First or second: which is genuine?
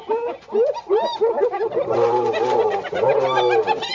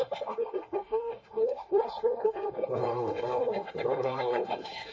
first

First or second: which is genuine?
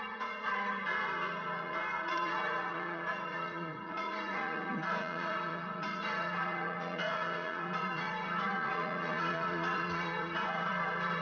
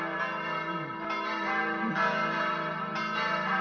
second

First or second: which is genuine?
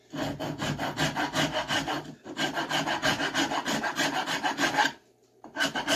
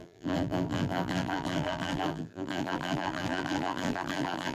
first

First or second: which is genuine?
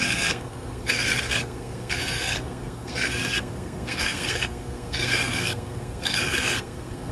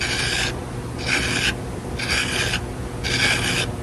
second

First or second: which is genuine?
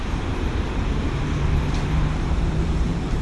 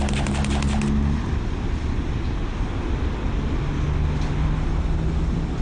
second